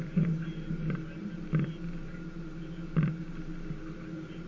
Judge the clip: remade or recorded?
recorded